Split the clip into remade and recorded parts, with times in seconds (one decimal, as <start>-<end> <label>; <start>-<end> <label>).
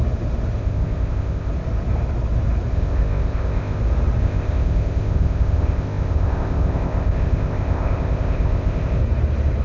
0.0-0.6 recorded; 0.6-1.5 remade; 1.5-2.7 recorded; 2.7-3.8 remade; 3.8-4.2 recorded; 4.2-9.0 remade; 9.0-9.6 recorded